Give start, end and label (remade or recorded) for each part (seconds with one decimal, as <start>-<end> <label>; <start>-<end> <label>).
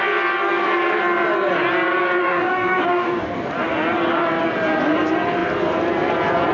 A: 0.0-2.2 recorded; 2.2-3.5 remade; 3.5-6.5 recorded